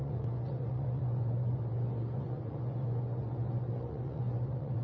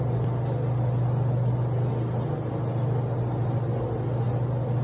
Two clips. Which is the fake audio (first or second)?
first